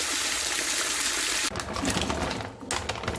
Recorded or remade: recorded